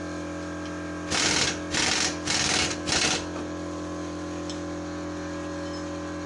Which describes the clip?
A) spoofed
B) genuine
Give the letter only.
B